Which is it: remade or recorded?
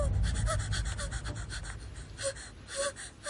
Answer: recorded